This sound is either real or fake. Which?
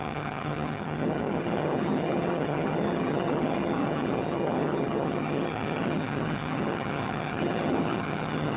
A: fake